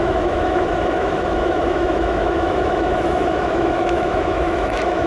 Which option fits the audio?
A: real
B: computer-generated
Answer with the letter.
B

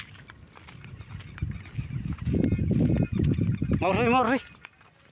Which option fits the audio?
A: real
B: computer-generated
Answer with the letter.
A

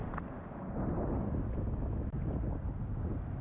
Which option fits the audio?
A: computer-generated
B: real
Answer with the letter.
B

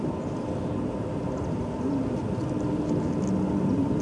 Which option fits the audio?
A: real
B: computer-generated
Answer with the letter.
A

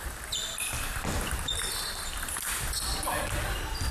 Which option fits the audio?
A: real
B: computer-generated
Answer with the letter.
A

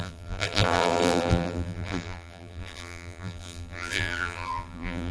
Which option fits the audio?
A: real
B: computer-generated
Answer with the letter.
B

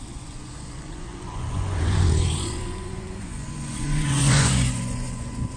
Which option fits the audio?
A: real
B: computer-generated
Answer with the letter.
B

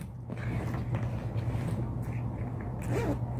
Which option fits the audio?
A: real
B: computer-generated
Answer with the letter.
A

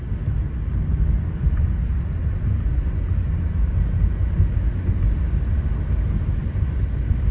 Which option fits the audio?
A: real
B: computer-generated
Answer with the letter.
A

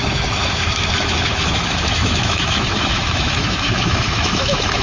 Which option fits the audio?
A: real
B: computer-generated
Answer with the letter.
B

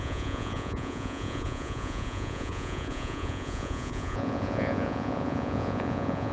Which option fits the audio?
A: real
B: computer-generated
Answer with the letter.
B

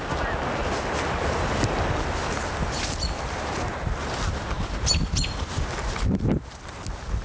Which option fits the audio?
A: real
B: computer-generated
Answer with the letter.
A